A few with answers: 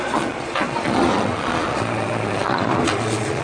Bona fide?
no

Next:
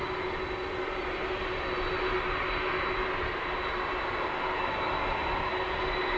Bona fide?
yes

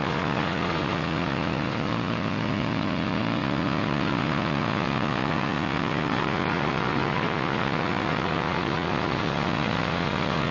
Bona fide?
no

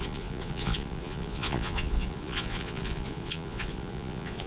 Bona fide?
no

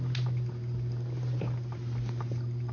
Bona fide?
yes